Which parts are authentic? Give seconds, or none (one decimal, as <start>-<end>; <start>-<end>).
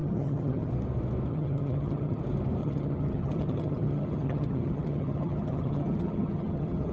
0.7-1.3; 2.2-2.6